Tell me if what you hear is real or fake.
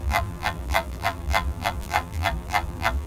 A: fake